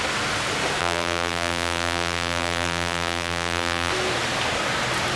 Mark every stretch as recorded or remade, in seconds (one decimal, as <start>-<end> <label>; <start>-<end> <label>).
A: 0.0-0.8 recorded; 0.8-3.9 remade; 3.9-5.2 recorded